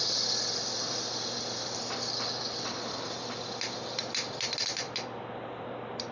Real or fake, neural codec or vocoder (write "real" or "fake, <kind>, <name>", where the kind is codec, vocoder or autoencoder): real